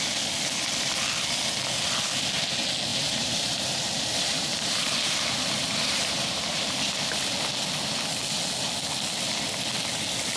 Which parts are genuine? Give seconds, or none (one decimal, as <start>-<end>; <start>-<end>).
0.0-2.9; 6.9-10.4